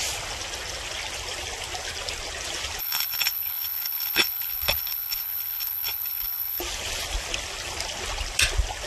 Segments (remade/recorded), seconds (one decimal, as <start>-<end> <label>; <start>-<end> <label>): 0.0-2.8 recorded; 2.8-6.6 remade; 6.6-8.9 recorded